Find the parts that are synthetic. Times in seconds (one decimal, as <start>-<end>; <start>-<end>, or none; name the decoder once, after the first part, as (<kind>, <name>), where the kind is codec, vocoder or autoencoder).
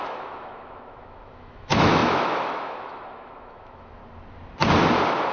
0.0-4.0 (autoencoder, DAC-VAE)